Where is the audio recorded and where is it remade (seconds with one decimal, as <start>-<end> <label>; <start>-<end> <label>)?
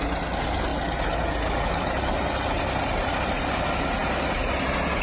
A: 0.0-5.0 recorded